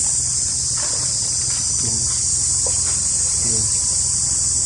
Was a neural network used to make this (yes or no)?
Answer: no